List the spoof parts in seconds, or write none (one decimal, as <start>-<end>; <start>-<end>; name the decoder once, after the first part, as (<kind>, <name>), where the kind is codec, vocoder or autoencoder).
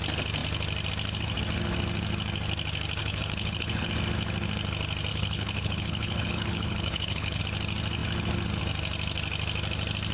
3.0-3.9 (codec, HILCodec); 5.1-7.4